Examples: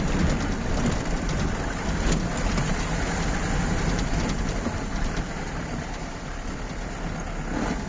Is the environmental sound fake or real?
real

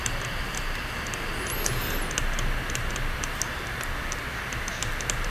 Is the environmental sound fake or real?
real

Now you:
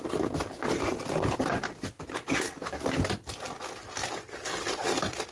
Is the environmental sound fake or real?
real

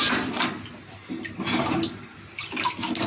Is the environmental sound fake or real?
real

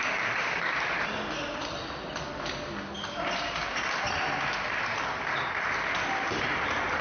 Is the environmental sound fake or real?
real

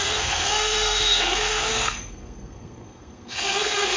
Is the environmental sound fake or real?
fake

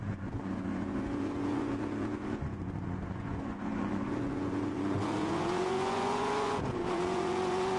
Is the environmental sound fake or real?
fake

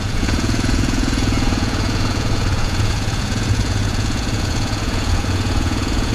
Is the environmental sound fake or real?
fake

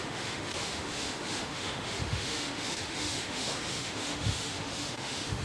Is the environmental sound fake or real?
fake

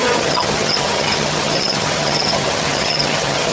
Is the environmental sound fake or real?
fake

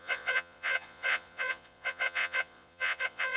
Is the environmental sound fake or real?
fake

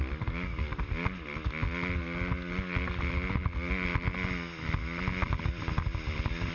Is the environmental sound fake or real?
real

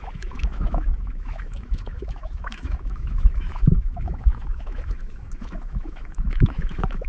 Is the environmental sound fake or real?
fake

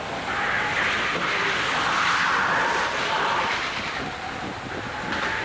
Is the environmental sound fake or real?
real